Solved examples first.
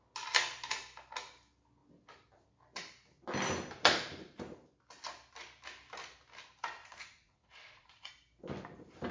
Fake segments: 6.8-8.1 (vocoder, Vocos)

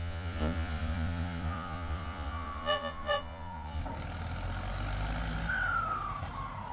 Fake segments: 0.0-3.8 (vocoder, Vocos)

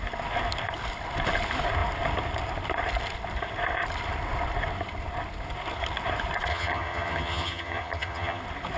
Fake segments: 6.5-8.4 (vocoder, HiFi-GAN)

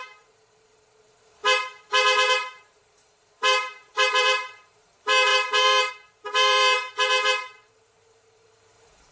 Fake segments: 0.0-1.4 (vocoder, BigVGAN v2); 2.3-9.1

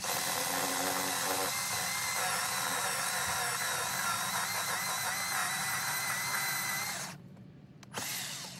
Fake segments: 5.4-6.9 (vocoder, BigVGAN v2)

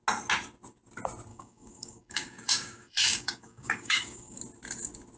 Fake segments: 1.3-4.4 (codec, DAC)